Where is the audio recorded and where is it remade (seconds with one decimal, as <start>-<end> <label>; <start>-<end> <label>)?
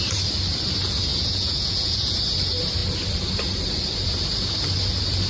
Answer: 0.0-1.1 recorded; 1.1-2.2 remade; 2.2-5.3 recorded